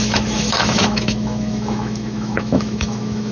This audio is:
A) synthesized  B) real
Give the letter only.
A